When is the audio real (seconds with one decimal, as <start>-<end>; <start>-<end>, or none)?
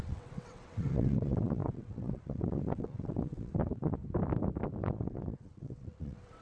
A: 4.0-4.8